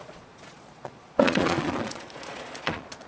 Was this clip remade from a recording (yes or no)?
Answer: yes